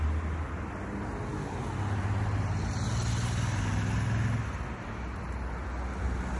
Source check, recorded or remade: recorded